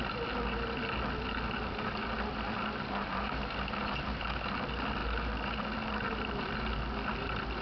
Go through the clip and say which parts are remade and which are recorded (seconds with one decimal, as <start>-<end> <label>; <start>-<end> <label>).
0.0-7.6 recorded